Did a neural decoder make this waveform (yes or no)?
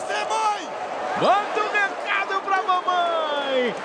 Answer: no